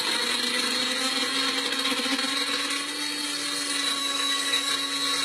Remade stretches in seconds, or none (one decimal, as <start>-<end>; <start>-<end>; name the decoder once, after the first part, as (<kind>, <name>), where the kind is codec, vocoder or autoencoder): 4.0-4.7 (codec, DAC)